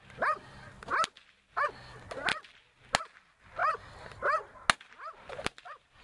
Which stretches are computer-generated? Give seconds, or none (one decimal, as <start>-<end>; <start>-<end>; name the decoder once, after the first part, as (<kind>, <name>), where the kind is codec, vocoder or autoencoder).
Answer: none